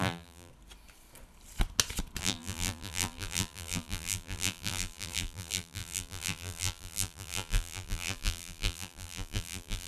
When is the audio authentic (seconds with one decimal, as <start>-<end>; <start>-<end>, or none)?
0.5-2.2